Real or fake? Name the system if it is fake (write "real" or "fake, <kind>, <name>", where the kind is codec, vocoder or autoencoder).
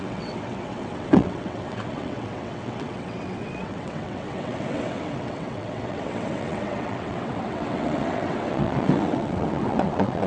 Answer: fake, vocoder, WaveNeXt